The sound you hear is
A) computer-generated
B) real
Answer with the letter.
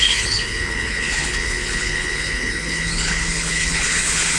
A